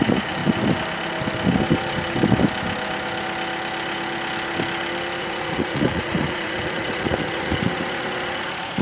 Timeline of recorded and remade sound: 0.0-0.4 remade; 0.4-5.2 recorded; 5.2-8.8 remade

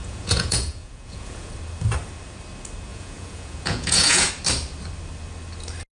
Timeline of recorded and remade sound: 0.0-1.5 remade; 1.5-2.9 recorded; 2.9-4.3 remade; 4.3-5.9 recorded

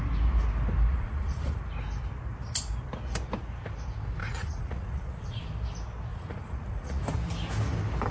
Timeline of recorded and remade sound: 0.0-0.9 recorded; 0.9-1.6 remade; 1.6-4.2 recorded; 4.2-5.4 remade; 5.4-6.1 recorded; 6.1-7.0 remade; 7.0-8.1 recorded

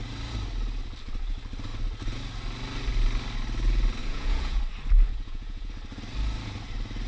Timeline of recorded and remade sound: 0.0-4.0 recorded; 4.0-4.6 remade; 4.6-5.1 recorded; 5.1-5.7 remade; 5.7-7.1 recorded